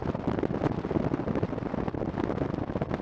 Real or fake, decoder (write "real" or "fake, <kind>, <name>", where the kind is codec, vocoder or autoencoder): real